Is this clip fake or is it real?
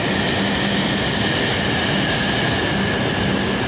real